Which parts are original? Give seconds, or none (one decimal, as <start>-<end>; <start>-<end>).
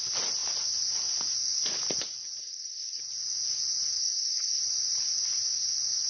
0.0-2.4; 3.0-4.0; 4.6-6.1